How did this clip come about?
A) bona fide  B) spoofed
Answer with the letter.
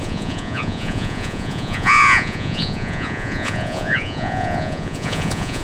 B